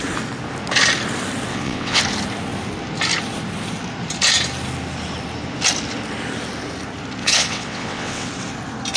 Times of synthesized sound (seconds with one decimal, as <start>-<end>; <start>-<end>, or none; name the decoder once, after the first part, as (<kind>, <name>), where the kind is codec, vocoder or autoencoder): 1.5-2.0 (vocoder, WaveNeXt); 7.2-8.3